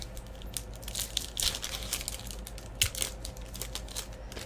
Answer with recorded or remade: recorded